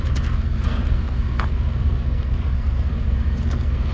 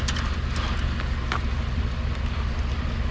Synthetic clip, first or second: first